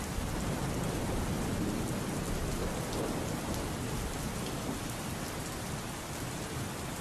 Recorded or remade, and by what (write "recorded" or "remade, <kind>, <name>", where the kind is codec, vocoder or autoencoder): recorded